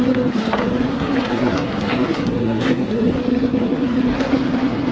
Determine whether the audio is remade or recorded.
remade